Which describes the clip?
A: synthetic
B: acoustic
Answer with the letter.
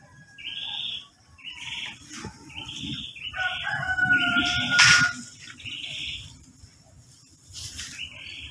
A